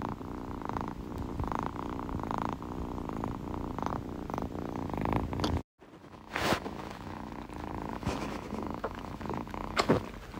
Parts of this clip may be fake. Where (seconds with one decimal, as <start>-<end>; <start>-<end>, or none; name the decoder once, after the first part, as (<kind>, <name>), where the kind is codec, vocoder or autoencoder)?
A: 6.0-7.3 (autoencoder, DAC-VAE); 7.9-10.0